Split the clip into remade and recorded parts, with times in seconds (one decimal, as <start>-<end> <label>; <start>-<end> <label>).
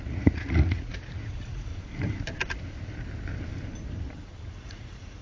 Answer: 0.0-1.7 remade; 1.7-4.6 recorded; 4.6-5.2 remade